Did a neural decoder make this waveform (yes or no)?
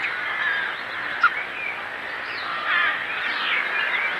no